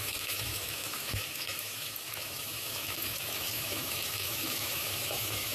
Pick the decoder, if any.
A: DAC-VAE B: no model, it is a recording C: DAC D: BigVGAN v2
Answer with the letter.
A